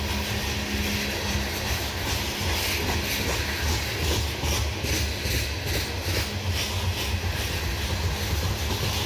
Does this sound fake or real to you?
real